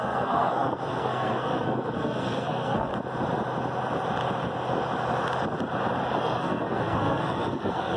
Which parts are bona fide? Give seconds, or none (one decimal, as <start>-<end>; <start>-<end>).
2.9-6.2